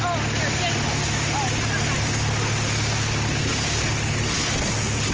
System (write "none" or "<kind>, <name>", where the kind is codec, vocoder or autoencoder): none